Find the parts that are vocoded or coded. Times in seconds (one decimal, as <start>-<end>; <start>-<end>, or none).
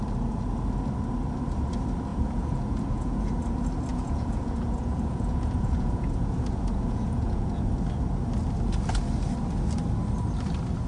2.1-3.3; 3.9-7.7